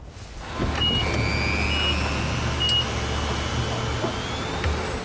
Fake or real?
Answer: real